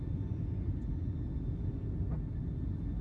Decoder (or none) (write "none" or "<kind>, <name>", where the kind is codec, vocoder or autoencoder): none